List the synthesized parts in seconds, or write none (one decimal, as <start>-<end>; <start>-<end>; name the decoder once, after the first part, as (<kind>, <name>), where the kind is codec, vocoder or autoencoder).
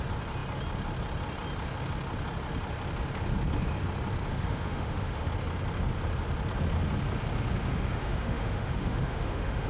4.3-5.3 (autoencoder, DAC-VAE); 7.7-9.7